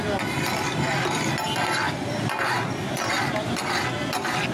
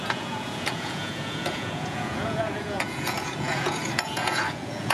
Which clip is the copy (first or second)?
second